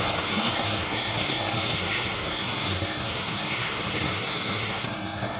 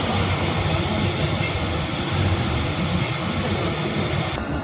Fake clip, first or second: first